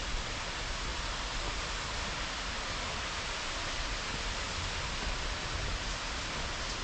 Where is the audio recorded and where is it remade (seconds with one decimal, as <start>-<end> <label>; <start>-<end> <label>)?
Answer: 0.0-6.8 recorded